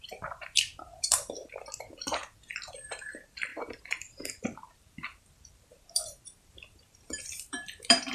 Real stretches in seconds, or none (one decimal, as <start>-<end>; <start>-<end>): none